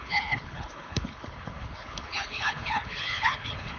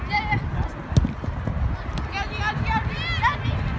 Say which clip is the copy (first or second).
first